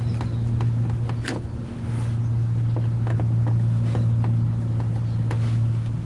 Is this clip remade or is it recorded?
recorded